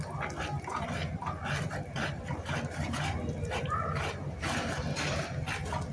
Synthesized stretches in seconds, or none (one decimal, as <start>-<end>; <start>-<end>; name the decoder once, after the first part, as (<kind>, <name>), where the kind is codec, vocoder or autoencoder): 1.4-4.4 (vocoder, BigVGAN v2)